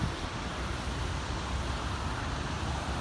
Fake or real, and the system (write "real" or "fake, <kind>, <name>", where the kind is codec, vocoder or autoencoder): real